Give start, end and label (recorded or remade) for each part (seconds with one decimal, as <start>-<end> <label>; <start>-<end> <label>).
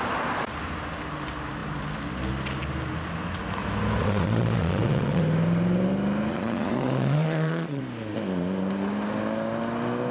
0.0-4.0 recorded; 4.0-5.2 remade; 5.2-6.3 recorded; 6.3-7.8 remade; 7.8-10.1 recorded